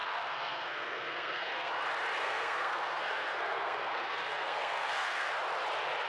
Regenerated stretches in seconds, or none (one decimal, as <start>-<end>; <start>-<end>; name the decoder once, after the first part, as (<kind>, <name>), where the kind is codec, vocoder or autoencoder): 0.0-1.7 (codec, SNAC); 2.2-5.3